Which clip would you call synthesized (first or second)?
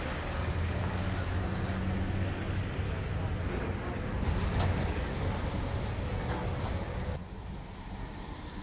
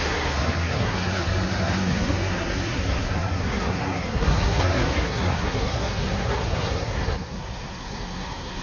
second